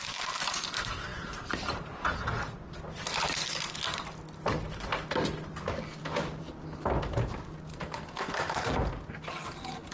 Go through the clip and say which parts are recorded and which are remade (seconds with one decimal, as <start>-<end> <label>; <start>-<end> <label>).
0.0-7.7 recorded; 7.7-8.8 remade; 8.8-9.9 recorded